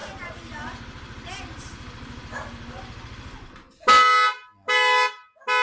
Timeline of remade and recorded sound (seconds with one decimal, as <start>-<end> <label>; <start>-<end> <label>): 0.0-5.6 recorded